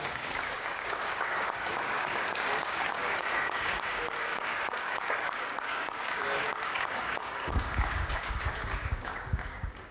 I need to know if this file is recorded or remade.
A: remade